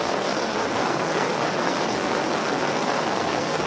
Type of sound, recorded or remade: remade